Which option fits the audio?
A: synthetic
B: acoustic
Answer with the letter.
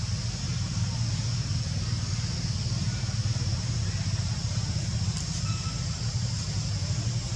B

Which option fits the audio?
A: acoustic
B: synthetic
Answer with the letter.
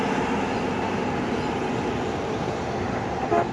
A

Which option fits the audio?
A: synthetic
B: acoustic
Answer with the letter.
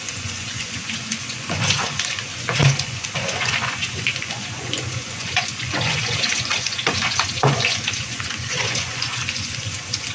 A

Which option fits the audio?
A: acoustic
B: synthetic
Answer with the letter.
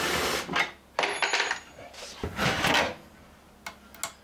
A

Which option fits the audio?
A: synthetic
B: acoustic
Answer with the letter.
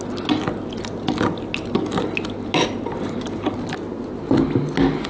B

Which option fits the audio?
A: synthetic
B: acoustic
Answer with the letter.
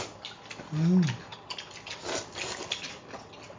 B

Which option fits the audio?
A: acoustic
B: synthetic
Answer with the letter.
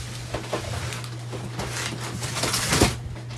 A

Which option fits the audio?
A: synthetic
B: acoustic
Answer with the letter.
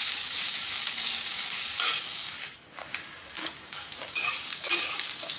A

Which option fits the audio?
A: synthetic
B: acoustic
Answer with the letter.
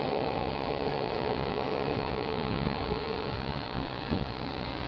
A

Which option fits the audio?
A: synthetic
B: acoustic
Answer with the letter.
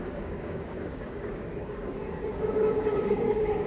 A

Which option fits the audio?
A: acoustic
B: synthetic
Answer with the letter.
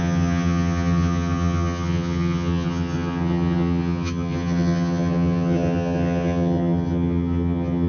B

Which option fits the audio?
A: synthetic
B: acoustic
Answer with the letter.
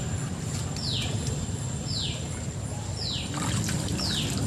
B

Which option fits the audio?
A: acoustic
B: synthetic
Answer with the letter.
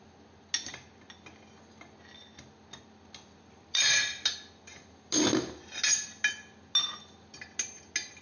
A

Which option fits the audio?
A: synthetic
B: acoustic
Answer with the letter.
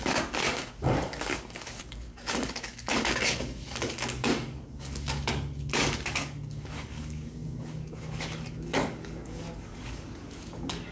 A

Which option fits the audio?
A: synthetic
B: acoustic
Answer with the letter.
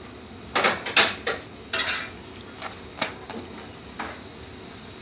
B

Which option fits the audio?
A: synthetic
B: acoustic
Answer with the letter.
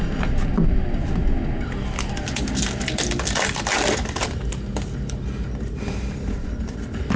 A